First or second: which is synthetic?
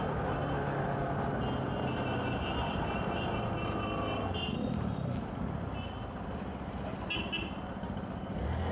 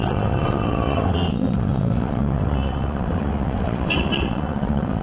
second